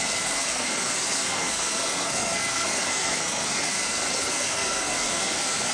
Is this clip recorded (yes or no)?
no